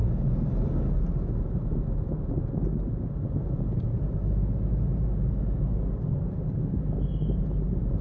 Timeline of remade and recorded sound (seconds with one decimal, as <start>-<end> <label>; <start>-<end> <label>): 0.0-8.0 recorded